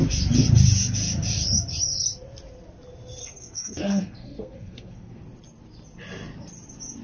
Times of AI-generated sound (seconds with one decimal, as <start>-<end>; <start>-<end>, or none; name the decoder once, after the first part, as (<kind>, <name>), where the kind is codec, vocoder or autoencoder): 3.2-5.2 (codec, SNAC)